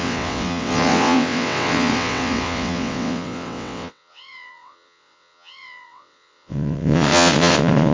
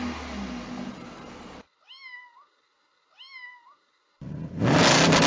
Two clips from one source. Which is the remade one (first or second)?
first